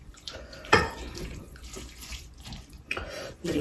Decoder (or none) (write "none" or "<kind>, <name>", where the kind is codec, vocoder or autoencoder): vocoder, Vocos